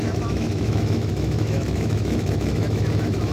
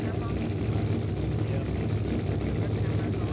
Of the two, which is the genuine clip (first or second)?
second